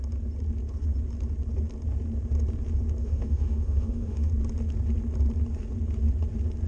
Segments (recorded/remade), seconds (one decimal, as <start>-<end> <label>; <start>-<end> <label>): 0.0-3.0 recorded; 3.0-4.3 remade; 4.3-6.7 recorded